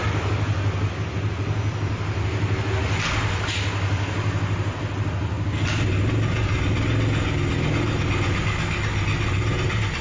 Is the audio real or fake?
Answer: real